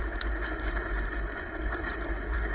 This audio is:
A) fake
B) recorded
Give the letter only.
A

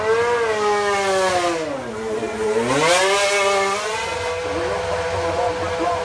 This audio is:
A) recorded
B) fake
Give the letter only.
A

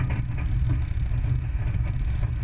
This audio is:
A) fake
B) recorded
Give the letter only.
B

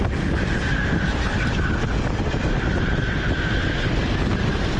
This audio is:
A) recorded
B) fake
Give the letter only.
A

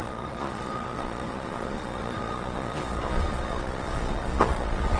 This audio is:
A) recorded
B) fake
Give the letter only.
B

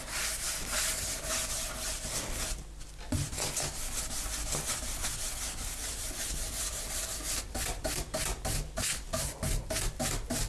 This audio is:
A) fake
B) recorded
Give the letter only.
B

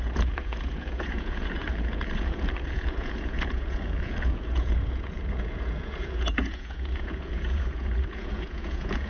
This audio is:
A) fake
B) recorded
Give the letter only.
A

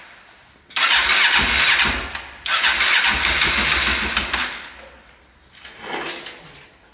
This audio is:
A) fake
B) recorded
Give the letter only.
B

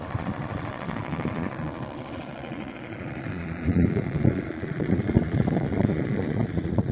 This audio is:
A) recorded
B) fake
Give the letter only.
B